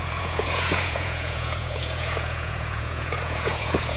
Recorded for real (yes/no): no